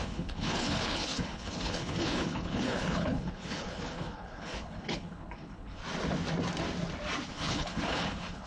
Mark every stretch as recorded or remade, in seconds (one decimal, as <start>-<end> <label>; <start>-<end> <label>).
0.0-5.8 remade; 5.8-7.3 recorded; 7.3-8.5 remade